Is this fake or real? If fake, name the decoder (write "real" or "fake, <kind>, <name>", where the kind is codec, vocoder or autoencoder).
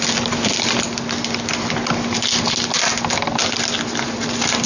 real